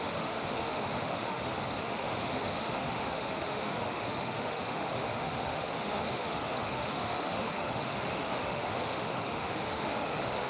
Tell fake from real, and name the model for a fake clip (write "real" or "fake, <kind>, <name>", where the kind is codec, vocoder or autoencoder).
fake, autoencoder, DAC-VAE